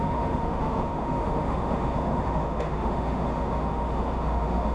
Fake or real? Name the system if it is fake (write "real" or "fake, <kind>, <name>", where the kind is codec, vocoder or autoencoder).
fake, autoencoder, DAC-VAE